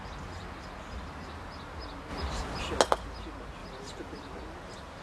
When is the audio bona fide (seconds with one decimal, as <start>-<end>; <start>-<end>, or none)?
0.0-2.1; 2.8-3.6; 4.4-5.0